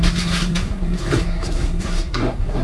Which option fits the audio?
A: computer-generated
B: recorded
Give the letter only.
A